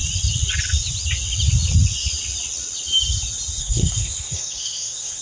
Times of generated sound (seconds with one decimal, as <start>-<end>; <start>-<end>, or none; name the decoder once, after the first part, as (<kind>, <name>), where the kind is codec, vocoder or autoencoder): 3.6-5.2 (codec, SNAC)